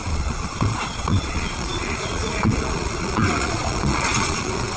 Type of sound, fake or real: fake